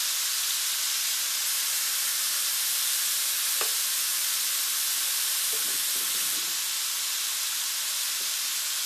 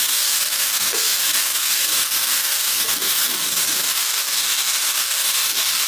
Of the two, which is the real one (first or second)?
first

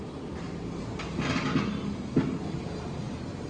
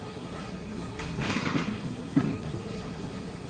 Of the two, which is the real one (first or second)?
first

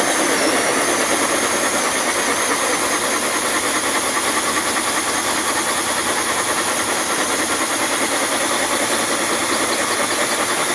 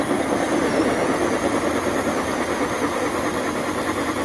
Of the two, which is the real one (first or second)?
first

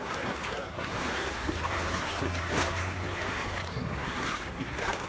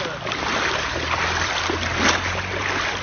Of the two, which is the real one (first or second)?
second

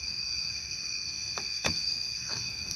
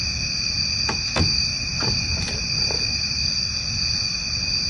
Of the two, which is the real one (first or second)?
second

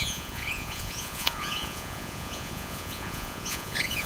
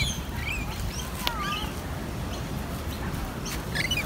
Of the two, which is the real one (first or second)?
second